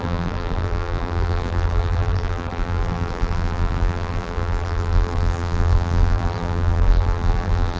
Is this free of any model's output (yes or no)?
no